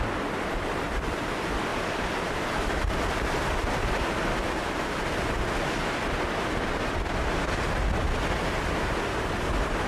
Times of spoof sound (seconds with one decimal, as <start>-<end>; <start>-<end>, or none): none